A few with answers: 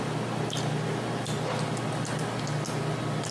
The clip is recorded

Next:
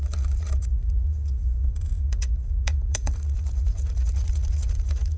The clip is remade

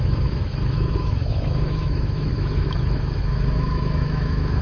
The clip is remade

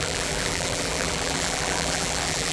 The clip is remade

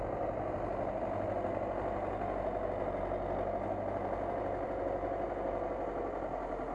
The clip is recorded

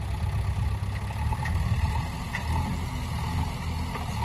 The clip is recorded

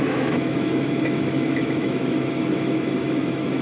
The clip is remade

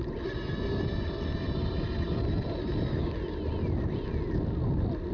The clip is recorded